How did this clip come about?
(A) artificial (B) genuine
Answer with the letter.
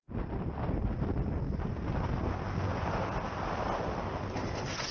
B